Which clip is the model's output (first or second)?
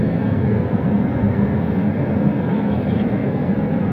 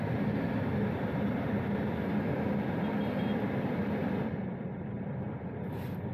first